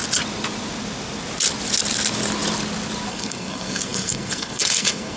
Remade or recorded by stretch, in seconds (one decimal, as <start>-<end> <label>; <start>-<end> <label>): 0.0-3.1 recorded; 3.1-5.2 remade